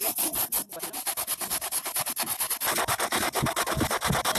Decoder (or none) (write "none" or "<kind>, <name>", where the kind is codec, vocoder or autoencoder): none